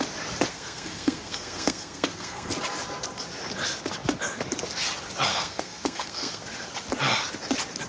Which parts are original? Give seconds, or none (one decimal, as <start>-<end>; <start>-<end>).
0.0-0.5; 2.5-5.3; 6.4-7.9